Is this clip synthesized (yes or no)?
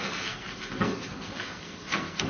yes